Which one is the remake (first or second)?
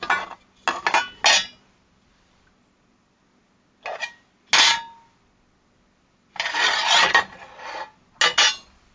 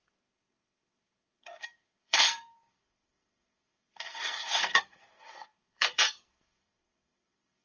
second